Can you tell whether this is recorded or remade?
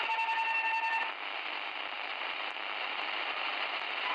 recorded